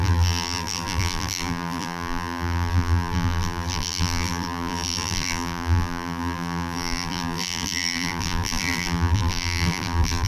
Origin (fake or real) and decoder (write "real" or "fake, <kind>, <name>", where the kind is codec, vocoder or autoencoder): fake, vocoder, BigVGAN v2